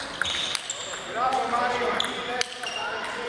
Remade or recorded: recorded